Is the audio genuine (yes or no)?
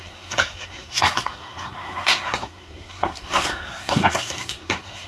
no